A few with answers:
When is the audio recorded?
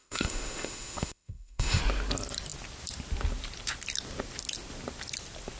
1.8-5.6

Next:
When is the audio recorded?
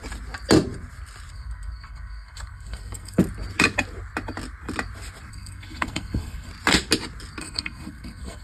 0.0-1.3; 3.2-5.3; 6.5-7.4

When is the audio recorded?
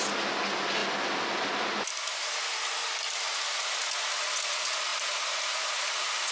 0.0-6.3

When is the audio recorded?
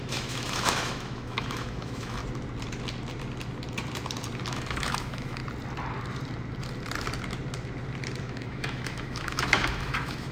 2.2-4.5; 5.4-8.2